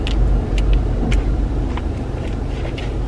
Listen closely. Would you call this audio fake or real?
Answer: real